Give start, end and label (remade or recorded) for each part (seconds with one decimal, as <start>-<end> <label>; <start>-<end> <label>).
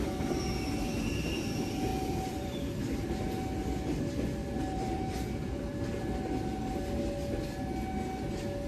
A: 0.0-1.9 recorded; 1.9-2.8 remade; 2.8-4.4 recorded; 4.4-5.7 remade; 5.7-8.7 recorded